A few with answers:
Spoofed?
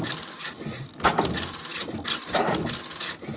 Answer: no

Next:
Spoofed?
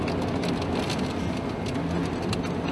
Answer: no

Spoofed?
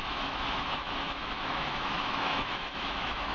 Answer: yes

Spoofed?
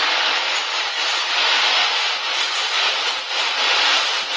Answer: no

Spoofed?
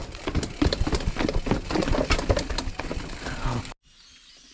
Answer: no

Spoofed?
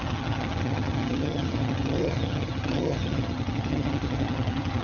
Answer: yes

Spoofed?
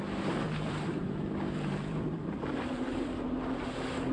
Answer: yes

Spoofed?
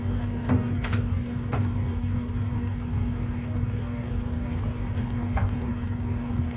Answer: yes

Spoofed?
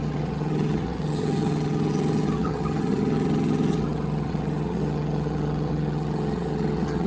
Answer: yes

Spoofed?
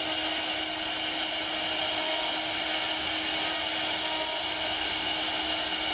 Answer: no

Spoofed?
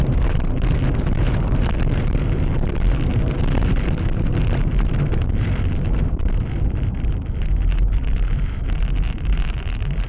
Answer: yes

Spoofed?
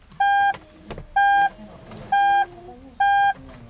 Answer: no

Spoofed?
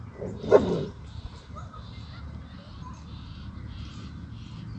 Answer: no